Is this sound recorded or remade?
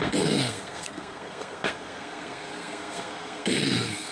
remade